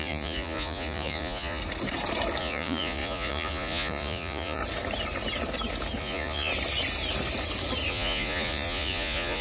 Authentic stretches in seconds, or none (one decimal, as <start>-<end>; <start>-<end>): 1.6-2.4; 4.6-6.0; 6.5-7.9